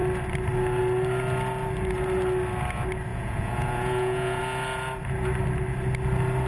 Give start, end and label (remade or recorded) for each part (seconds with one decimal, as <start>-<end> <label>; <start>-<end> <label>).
0.0-3.1 recorded; 3.1-4.4 remade; 4.4-6.5 recorded

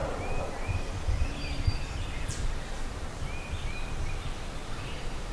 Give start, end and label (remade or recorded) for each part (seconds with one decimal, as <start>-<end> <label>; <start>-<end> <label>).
0.0-3.2 remade; 3.2-5.3 recorded

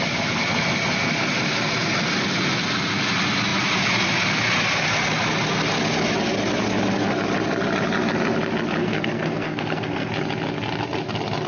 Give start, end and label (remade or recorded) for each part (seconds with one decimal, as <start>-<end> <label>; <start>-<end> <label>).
0.0-8.8 recorded; 8.8-10.1 remade; 10.1-11.5 recorded

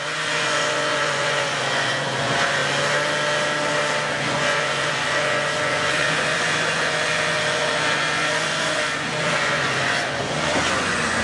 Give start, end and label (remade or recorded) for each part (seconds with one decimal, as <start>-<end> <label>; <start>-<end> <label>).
0.0-2.6 remade; 2.6-4.2 recorded; 4.2-11.2 remade

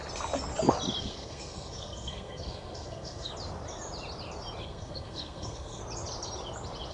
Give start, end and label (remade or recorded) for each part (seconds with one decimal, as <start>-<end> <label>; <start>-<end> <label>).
0.0-1.0 recorded; 1.0-3.3 remade; 3.3-4.6 recorded; 4.6-5.8 remade; 5.8-6.9 recorded

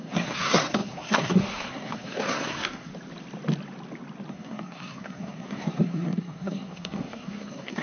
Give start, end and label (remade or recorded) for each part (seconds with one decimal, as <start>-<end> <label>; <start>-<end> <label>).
0.0-2.9 remade; 2.9-4.3 recorded; 4.3-7.8 remade

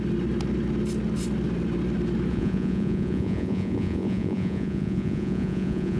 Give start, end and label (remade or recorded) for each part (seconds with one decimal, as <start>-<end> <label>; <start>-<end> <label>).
0.0-2.3 recorded; 2.3-6.0 remade

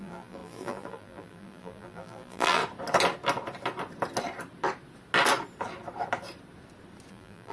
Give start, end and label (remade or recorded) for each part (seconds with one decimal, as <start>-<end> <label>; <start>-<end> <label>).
0.0-2.6 remade; 2.6-7.1 recorded; 7.1-7.5 remade